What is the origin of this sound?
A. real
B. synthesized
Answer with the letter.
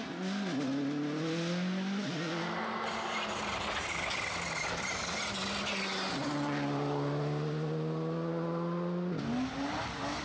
A